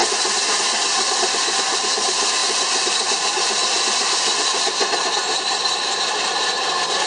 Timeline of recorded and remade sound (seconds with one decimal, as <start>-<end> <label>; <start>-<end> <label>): 0.0-7.1 recorded